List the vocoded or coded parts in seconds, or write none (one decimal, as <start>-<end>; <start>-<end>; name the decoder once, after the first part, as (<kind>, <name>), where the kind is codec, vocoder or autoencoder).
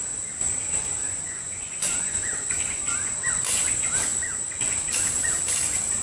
1.0-3.4 (vocoder, Vocos)